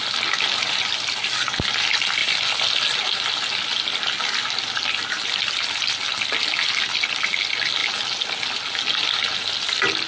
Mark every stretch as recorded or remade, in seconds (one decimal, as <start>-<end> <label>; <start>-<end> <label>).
0.0-10.1 recorded

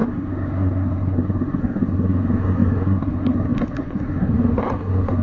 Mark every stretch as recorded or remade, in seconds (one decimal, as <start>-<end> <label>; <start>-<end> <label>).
0.0-5.2 remade

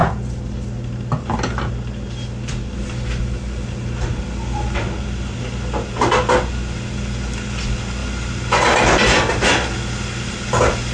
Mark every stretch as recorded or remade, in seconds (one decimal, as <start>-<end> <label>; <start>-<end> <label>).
0.0-10.9 recorded

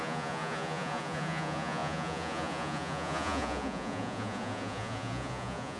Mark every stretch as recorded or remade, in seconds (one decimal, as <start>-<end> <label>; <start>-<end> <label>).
0.0-5.8 remade

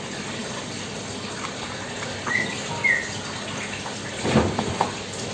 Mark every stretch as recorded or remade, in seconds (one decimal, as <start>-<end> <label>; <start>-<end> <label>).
0.0-5.3 recorded

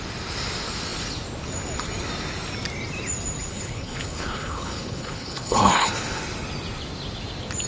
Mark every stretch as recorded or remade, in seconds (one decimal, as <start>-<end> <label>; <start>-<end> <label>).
0.0-3.5 recorded; 3.5-6.2 remade; 6.2-7.7 recorded